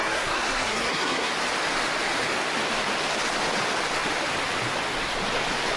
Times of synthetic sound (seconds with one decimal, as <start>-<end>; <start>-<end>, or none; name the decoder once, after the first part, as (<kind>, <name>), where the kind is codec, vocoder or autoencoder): 0.0-1.3 (codec, SNAC)